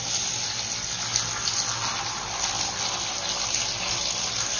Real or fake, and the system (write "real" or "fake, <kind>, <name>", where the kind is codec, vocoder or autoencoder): real